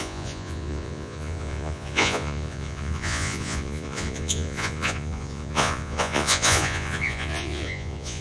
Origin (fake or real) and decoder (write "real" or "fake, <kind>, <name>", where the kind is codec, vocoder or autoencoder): fake, vocoder, Vocos